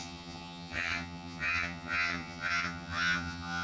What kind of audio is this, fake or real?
fake